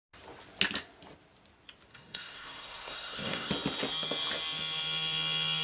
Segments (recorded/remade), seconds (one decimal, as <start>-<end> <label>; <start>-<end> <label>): 0.0-1.9 recorded; 1.9-3.5 remade; 3.5-5.6 recorded